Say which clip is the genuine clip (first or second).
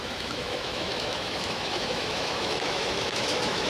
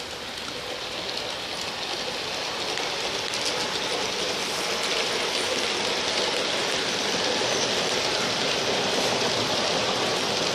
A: second